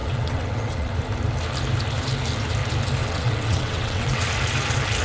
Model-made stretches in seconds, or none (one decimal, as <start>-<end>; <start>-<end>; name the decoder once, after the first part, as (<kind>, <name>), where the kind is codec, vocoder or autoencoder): 0.0-0.9 (vocoder, WaveNeXt); 3.0-4.3

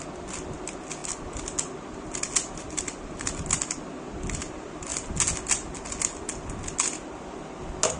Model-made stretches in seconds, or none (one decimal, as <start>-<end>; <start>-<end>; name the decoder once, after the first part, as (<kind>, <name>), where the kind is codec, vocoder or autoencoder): none

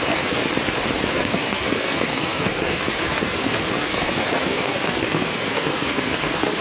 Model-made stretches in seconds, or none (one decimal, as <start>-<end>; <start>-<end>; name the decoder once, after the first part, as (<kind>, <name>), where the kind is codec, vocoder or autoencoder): 0.0-0.4 (codec, SNAC); 1.1-6.6

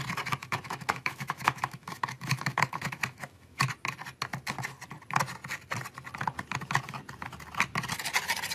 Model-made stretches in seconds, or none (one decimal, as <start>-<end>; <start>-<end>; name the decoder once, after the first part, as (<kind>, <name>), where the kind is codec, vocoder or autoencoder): 0.4-3.7 (autoencoder, DAC-VAE)

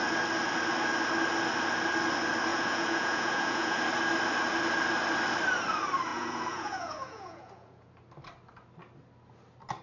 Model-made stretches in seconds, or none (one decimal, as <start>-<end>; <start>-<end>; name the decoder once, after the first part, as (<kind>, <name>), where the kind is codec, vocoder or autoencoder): 2.5-3.8 (vocoder, Vocos); 6.1-7.9

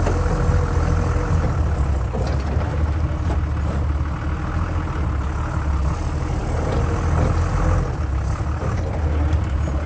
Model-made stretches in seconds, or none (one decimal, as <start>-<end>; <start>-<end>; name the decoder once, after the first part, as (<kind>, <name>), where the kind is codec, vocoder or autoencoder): none

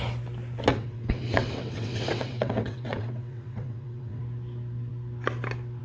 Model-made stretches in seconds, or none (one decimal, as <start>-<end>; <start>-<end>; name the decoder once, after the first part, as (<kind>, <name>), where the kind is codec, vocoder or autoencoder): 0.7-4.2 (vocoder, WaveNeXt)

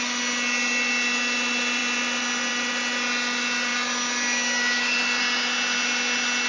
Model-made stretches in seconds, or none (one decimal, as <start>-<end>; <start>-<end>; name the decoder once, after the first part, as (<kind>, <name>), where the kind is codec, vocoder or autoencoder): none